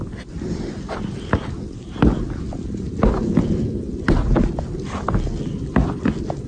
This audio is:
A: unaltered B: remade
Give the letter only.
A